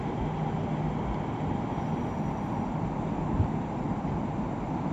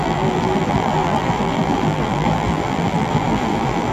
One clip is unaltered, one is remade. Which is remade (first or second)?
second